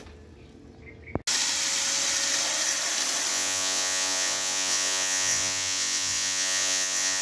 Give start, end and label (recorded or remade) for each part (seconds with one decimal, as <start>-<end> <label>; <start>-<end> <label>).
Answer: 0.0-3.3 recorded; 3.3-7.2 remade